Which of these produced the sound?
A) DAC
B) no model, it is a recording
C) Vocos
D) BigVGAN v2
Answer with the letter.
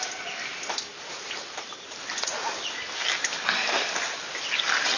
B